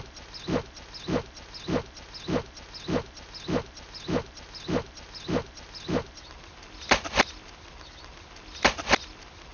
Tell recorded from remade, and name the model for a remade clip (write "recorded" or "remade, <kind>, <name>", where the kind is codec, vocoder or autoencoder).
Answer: recorded